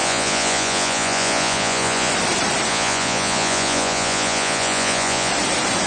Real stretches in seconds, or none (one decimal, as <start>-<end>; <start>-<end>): 2.1-2.7; 5.3-5.9

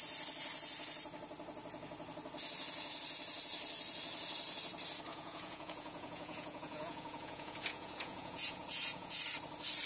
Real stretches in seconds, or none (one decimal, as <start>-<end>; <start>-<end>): 0.0-5.1; 9.2-9.9

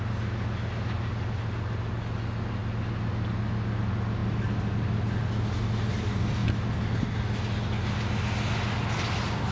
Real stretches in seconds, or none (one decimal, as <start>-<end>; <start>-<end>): 0.0-9.5

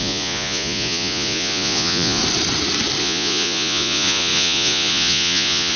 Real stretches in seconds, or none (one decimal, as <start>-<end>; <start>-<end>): 2.2-3.0

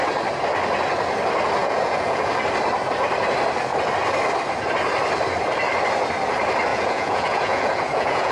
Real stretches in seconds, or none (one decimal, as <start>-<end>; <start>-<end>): 0.0-1.6; 2.3-6.7

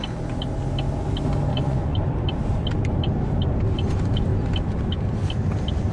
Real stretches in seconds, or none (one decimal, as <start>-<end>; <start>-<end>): 0.0-1.5; 2.1-5.9